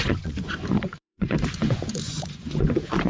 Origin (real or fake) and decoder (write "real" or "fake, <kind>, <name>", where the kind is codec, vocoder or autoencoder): fake, vocoder, Vocos